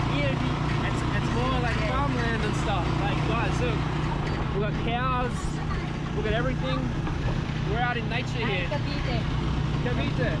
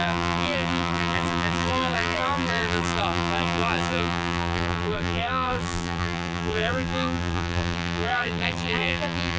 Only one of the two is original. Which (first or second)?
first